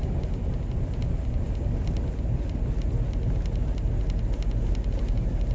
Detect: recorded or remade recorded